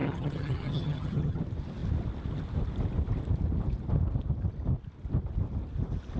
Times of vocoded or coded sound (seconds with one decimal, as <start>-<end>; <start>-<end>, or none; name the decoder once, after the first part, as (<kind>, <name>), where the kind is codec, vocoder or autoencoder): 0.0-1.4 (vocoder, HiFi-GAN)